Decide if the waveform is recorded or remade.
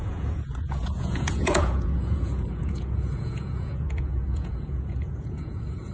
remade